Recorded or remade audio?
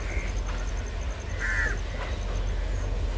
recorded